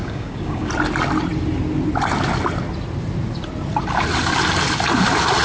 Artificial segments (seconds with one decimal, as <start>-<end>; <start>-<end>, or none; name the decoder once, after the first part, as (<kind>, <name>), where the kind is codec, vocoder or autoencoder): 0.0-0.7 (codec, DAC)